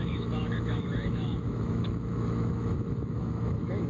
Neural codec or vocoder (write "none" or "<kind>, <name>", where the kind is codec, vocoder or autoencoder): autoencoder, DAC-VAE